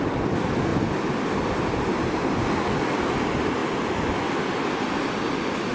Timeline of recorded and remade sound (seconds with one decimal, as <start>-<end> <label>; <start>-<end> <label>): 0.0-5.7 recorded